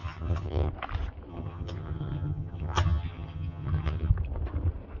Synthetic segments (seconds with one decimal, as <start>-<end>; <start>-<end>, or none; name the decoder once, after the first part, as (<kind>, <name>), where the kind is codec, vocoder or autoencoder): 0.0-0.7 (vocoder, HiFi-GAN); 1.3-4.1

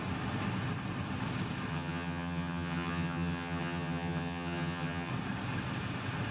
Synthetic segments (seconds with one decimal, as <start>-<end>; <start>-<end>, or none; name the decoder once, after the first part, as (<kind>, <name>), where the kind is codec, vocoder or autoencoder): 1.7-5.1 (vocoder, HiFi-GAN)